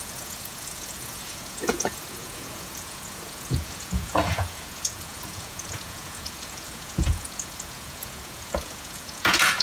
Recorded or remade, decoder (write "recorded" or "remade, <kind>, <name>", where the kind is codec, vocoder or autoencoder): remade, vocoder, Vocos